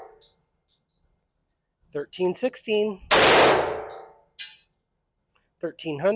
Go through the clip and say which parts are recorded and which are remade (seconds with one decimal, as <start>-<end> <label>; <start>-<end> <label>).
0.0-6.2 recorded